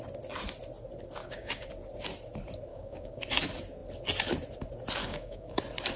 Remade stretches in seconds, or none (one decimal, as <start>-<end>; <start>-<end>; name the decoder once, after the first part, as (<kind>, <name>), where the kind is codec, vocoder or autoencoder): 1.2-1.7 (codec, DAC); 2.7-3.2; 5.0-5.6